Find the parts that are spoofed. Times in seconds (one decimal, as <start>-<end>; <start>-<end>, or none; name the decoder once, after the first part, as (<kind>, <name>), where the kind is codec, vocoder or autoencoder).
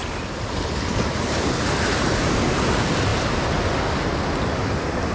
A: none